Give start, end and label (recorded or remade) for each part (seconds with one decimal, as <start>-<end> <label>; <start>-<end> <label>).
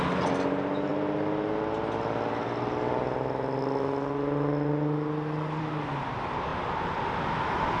0.0-7.8 recorded